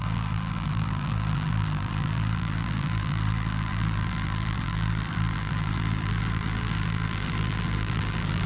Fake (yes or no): yes